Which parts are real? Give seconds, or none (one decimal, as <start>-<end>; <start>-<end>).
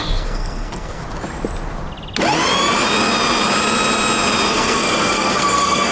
1.0-4.5